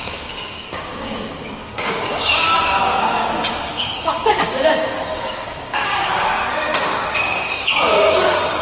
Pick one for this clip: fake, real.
fake